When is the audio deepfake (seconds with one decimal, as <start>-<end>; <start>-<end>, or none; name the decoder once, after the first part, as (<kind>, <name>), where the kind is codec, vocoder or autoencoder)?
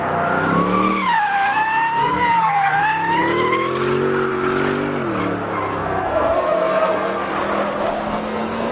2.0-2.8 (codec, SNAC); 5.7-7.3; 8.1-8.7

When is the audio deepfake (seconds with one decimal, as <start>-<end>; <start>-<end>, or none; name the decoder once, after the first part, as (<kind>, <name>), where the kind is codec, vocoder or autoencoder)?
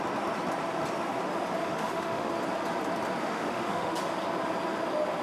1.6-2.3 (autoencoder, DAC-VAE); 3.2-4.0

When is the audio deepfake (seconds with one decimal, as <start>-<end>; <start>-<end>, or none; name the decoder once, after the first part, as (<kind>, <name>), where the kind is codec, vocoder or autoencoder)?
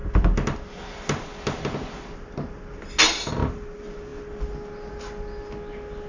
none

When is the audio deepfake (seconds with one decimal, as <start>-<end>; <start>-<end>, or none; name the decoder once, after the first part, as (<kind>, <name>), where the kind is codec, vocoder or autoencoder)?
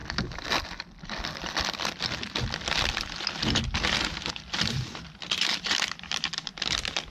4.3-6.5 (vocoder, BigVGAN v2)